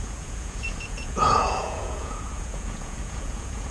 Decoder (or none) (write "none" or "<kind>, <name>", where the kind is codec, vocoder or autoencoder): vocoder, Vocos